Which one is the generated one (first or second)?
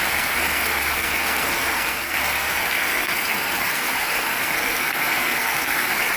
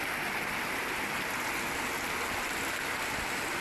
first